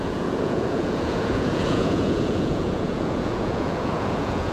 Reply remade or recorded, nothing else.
remade